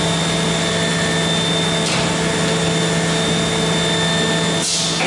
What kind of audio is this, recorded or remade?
recorded